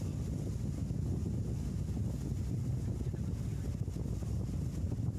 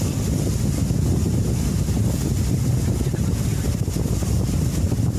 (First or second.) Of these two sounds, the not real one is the second